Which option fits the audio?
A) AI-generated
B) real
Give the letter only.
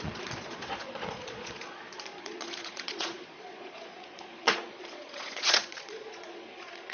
A